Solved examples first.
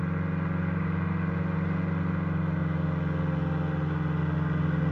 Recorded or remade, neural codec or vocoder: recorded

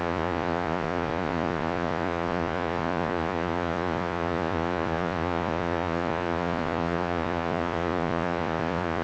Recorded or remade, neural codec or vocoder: remade, vocoder, Vocos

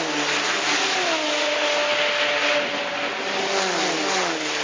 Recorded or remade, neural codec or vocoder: recorded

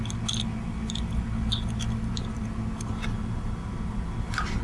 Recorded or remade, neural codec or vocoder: recorded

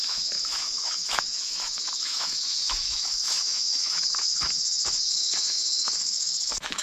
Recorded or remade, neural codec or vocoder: remade, autoencoder, DAC-VAE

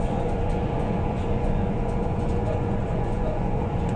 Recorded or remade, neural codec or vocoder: remade, vocoder, Vocos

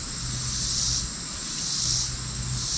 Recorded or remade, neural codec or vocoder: recorded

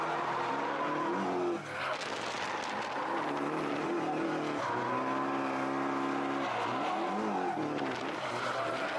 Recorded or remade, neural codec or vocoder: recorded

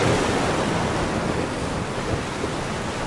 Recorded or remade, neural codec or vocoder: recorded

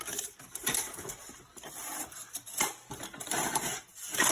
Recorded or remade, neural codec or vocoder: recorded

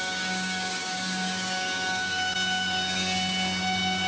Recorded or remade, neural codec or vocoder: remade, codec, DAC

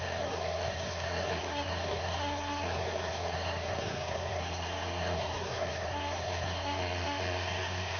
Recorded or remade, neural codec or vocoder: remade, codec, SNAC